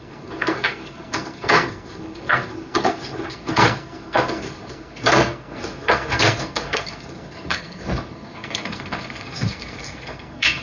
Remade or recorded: remade